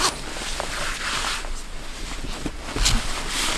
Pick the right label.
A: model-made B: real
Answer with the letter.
B